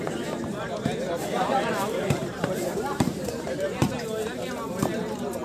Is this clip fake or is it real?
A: fake